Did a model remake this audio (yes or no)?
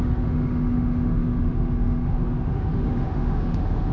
yes